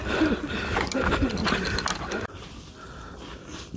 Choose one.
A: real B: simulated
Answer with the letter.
A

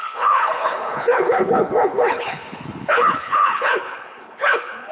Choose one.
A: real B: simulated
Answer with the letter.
B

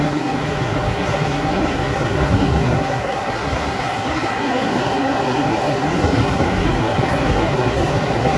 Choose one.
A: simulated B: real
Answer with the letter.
A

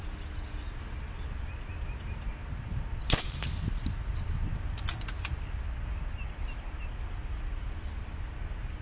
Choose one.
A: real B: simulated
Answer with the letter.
A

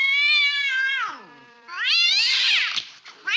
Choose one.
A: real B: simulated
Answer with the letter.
B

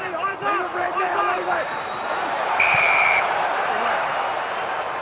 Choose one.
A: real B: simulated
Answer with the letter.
B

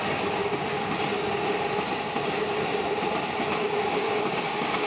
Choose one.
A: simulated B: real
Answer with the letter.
B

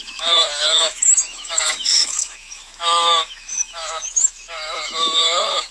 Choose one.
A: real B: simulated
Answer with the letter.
B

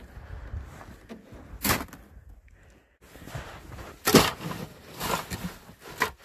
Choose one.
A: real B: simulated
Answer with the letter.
A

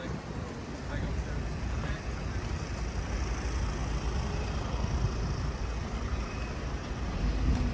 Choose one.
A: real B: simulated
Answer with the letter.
A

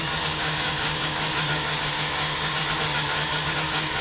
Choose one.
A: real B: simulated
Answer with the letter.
B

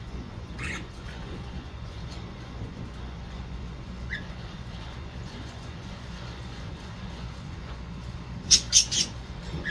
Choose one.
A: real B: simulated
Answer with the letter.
B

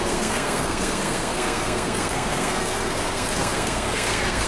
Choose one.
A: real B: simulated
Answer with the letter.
B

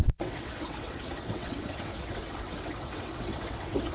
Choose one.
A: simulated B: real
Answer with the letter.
A